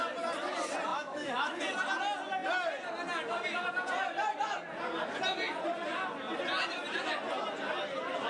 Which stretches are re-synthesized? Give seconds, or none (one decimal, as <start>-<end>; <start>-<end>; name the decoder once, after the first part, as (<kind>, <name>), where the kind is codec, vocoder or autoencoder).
0.9-1.6 (autoencoder, DAC-VAE)